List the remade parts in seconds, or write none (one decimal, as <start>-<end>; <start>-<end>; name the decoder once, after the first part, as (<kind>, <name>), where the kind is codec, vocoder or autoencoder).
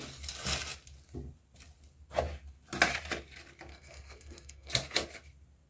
3.7-4.7 (codec, SNAC)